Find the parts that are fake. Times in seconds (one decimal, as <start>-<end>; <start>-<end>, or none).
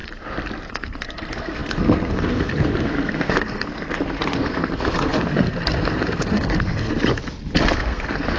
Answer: 0.7-7.0; 7.8-8.4